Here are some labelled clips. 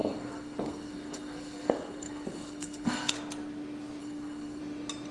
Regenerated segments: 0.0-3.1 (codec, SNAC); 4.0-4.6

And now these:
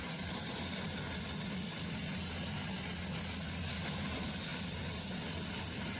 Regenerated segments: none

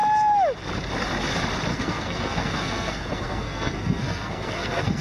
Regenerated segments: 1.7-5.0 (codec, SNAC)

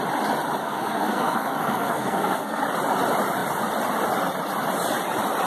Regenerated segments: 0.6-2.6 (codec, SNAC)

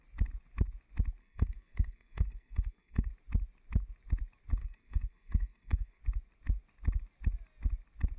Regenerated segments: 1.2-3.1 (codec, SNAC); 4.6-6.0

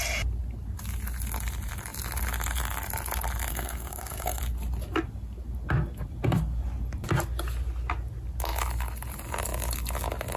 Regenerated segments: 3.5-4.4 (codec, SNAC)

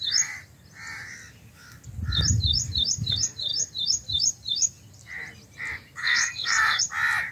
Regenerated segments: 6.0-6.8 (codec, SNAC)